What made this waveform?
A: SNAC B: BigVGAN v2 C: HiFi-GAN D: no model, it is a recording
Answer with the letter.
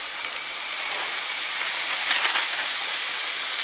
D